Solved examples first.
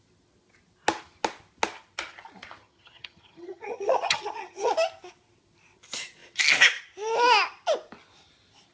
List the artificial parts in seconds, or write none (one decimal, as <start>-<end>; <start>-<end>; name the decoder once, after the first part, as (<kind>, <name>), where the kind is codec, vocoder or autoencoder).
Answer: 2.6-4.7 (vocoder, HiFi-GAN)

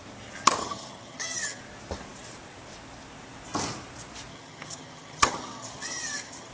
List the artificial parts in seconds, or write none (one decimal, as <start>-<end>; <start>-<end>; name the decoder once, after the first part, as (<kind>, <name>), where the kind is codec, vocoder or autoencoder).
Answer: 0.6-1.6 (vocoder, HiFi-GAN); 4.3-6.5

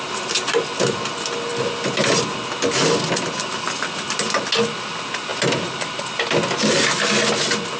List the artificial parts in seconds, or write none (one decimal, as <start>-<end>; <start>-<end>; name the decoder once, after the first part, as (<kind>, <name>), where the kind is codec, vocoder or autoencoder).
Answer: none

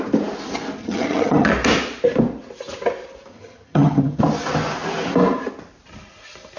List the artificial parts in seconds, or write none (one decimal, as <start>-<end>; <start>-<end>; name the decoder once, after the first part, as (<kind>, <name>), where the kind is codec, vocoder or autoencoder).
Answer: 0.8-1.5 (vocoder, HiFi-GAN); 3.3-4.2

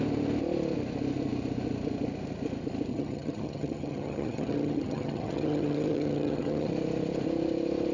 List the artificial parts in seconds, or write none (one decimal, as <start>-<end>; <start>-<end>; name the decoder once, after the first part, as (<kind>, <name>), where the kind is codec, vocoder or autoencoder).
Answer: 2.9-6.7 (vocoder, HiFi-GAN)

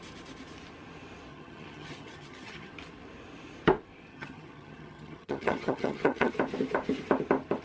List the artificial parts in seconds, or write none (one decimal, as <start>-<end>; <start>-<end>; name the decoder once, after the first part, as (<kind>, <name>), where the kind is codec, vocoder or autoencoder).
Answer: 1.3-2.7 (vocoder, HiFi-GAN); 4.1-6.3